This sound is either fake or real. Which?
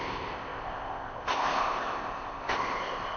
fake